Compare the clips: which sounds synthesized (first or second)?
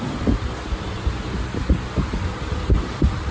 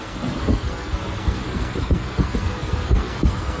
second